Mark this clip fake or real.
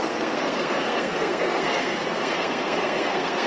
fake